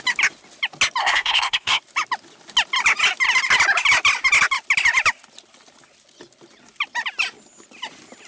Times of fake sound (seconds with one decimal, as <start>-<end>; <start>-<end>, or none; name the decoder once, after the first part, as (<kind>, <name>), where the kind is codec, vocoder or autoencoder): 1.0-1.8 (codec, SNAC)